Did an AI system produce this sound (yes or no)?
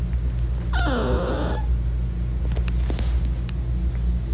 no